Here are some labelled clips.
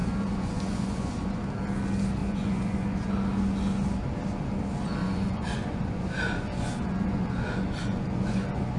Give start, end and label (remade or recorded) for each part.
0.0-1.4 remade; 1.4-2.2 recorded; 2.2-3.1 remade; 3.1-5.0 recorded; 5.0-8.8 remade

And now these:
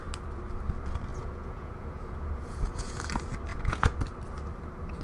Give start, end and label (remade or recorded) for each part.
0.0-1.1 recorded; 1.1-3.0 remade; 3.0-3.5 recorded; 3.5-4.0 remade; 4.0-5.0 recorded

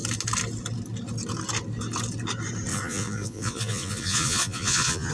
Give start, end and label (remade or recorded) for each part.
0.0-2.7 recorded; 2.7-5.1 remade